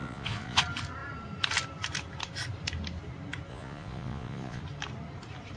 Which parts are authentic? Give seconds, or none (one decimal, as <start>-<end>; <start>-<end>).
0.6-3.5; 4.6-5.6